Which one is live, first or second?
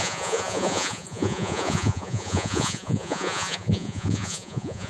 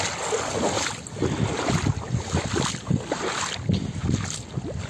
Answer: second